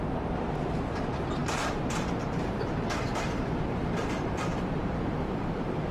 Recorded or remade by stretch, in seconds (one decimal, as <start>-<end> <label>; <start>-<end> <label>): 0.0-5.9 remade